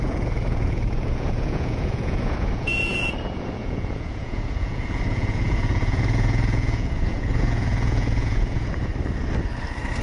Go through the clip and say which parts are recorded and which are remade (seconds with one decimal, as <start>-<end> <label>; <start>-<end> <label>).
0.0-8.9 remade; 8.9-10.0 recorded